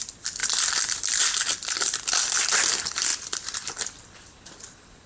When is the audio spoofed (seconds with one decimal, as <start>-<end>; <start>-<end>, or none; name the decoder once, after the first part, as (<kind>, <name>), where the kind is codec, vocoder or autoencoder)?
none